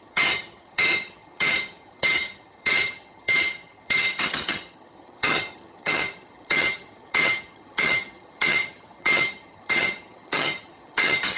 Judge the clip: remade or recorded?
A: remade